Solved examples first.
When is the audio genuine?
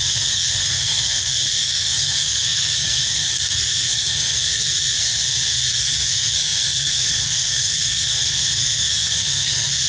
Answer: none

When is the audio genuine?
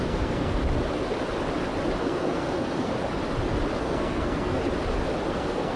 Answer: 0.6-2.0; 2.9-3.8; 4.6-5.3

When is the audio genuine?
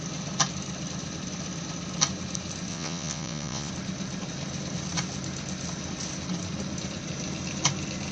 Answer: 0.0-2.7; 3.7-8.1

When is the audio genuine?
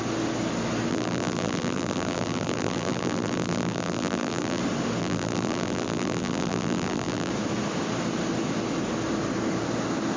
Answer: 0.0-0.9; 4.6-5.0; 7.3-10.2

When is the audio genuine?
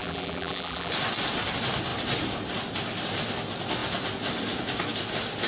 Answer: 0.9-5.5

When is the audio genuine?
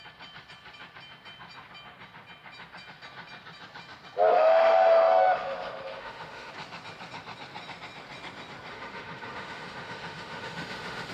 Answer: 0.0-4.3; 6.5-8.7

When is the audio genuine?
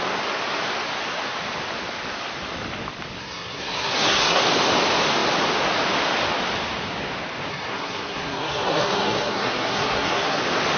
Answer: 0.0-3.2; 4.4-7.5; 10.4-10.8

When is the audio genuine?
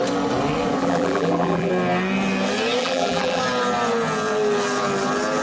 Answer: 0.0-0.8; 1.7-2.8; 3.4-5.4